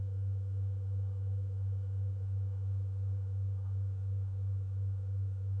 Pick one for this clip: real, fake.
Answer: fake